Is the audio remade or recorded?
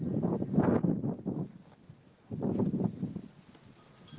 recorded